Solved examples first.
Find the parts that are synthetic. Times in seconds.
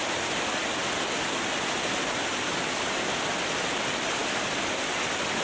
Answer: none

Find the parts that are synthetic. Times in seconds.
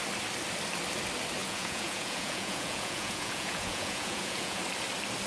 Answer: 1.4-4.6 (vocoder, Vocos)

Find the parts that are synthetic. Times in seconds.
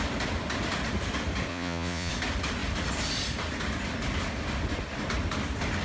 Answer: 1.5-2.1 (vocoder, Vocos)